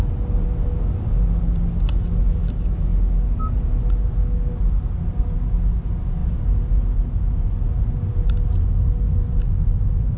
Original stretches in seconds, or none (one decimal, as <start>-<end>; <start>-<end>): 0.0-10.2